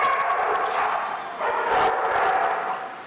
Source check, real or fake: real